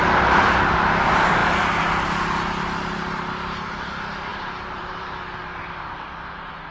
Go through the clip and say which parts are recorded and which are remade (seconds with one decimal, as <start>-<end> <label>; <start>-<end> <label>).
0.0-4.3 recorded; 4.3-5.6 remade; 5.6-6.7 recorded